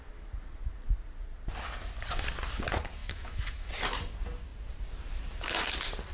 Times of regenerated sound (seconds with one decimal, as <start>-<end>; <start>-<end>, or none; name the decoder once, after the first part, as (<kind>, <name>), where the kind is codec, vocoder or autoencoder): 3.0-3.7 (autoencoder, DAC-VAE)

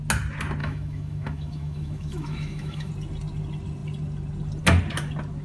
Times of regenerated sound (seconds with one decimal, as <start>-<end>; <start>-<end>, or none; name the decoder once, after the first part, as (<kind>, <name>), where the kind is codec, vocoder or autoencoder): 0.6-2.9 (autoencoder, DAC-VAE)

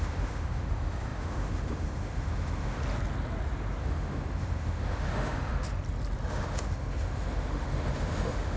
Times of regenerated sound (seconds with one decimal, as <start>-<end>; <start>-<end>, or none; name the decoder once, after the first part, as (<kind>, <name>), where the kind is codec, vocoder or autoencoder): 0.0-2.8 (autoencoder, DAC-VAE); 3.8-5.5; 6.3-8.6